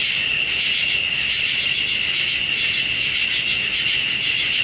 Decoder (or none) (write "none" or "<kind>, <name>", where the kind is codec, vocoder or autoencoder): none